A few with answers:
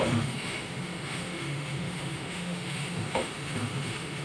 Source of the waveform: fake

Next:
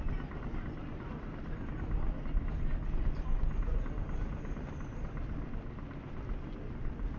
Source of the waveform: real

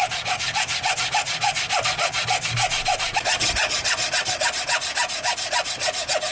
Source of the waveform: real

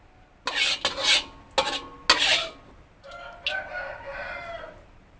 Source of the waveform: real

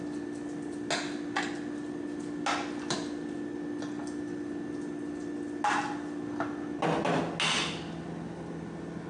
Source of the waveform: real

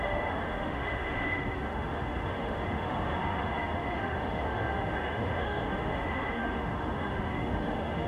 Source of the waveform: fake